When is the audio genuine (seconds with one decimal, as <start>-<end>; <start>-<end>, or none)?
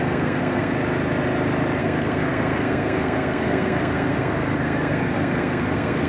0.7-1.8